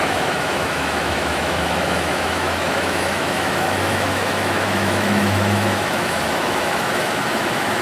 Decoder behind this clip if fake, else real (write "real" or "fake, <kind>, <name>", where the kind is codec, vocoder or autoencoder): fake, autoencoder, DAC-VAE